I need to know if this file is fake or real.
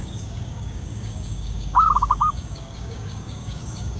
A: fake